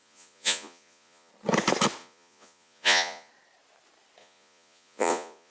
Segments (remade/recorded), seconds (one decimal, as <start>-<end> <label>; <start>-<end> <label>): 0.0-1.3 remade; 1.3-2.0 recorded; 2.0-3.3 remade; 3.3-4.2 recorded; 4.2-5.5 remade

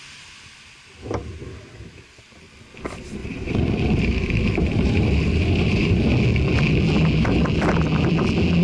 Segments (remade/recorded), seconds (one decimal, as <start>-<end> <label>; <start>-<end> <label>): 0.0-3.2 recorded; 3.2-6.0 remade; 6.0-8.6 recorded

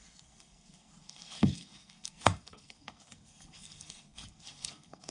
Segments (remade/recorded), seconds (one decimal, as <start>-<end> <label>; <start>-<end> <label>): 0.0-5.1 remade

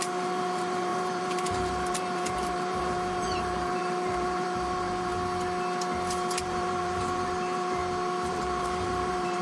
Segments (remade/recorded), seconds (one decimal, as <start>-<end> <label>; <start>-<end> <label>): 0.0-5.1 remade; 5.1-6.4 recorded; 6.4-7.8 remade; 7.8-8.3 recorded; 8.3-9.4 remade

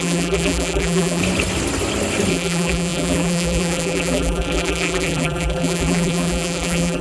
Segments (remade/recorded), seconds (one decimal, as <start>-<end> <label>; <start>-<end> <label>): 0.0-1.2 remade; 1.2-2.3 recorded; 2.3-7.0 remade

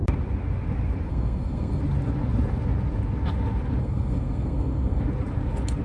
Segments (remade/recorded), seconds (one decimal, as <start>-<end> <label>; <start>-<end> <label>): 0.0-1.1 recorded; 1.1-1.8 remade; 1.8-3.8 recorded; 3.8-5.0 remade; 5.0-5.8 recorded